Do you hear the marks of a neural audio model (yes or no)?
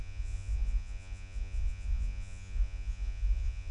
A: yes